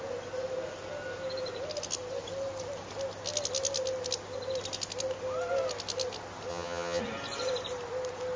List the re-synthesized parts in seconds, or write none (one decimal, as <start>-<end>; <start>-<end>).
6.5-7.0